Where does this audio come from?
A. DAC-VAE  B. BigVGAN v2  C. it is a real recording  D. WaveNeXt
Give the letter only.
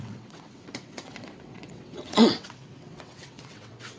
D